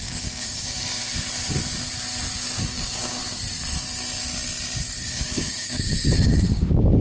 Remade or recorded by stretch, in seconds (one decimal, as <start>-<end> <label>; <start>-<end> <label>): 0.0-1.0 remade; 1.0-2.3 recorded; 2.3-3.2 remade; 3.2-5.0 recorded; 5.0-7.0 remade